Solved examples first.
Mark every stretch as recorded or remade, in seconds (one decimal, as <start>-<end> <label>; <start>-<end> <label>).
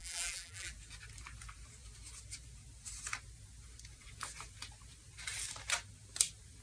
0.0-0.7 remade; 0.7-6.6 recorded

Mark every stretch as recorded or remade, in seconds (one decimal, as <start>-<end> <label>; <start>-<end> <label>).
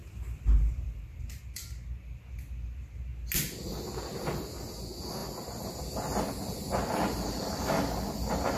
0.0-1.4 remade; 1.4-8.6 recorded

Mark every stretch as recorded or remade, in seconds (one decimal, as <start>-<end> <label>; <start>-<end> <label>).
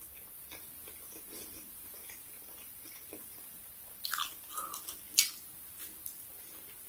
0.0-0.8 recorded; 0.8-3.9 remade; 3.9-6.9 recorded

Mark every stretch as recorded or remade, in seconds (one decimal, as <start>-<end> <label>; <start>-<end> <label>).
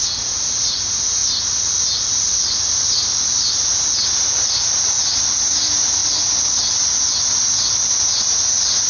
0.0-1.2 remade; 1.2-2.1 recorded; 2.1-3.7 remade; 3.7-5.6 recorded; 5.6-6.0 remade; 6.0-7.3 recorded; 7.3-8.9 remade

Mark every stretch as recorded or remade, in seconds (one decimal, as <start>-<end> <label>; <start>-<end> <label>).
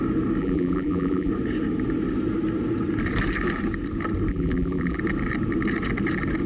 0.0-0.4 recorded; 0.4-1.3 remade; 1.3-4.3 recorded; 4.3-5.0 remade; 5.0-6.5 recorded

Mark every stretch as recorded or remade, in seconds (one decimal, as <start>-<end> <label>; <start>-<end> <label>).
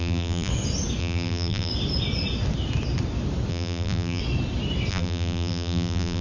0.0-0.5 remade; 0.5-1.0 recorded; 1.0-1.7 remade; 1.7-3.5 recorded; 3.5-4.2 remade; 4.2-4.9 recorded; 4.9-6.2 remade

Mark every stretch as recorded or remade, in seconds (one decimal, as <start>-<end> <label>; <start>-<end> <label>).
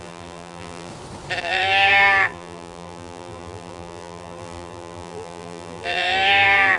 0.0-0.9 remade; 0.9-1.4 recorded; 1.4-6.8 remade